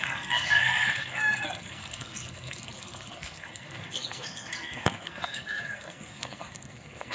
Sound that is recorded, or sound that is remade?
remade